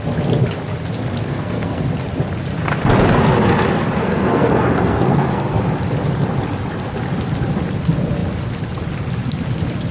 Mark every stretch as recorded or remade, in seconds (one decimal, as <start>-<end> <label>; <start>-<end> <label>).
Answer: 0.0-1.2 recorded; 1.2-1.8 remade; 1.8-4.0 recorded; 4.0-5.6 remade; 5.6-9.9 recorded